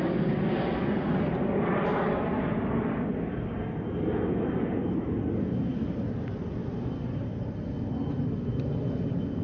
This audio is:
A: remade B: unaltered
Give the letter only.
B